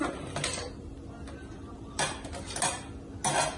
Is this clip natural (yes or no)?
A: yes